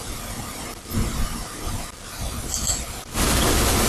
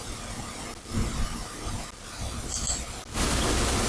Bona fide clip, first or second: second